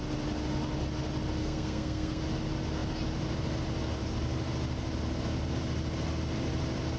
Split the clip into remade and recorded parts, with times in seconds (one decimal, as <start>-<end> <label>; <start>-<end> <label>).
0.0-1.4 recorded; 1.4-2.2 remade; 2.2-7.0 recorded